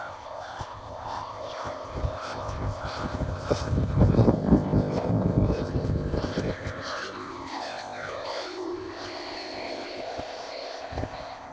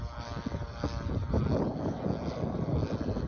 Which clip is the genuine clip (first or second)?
second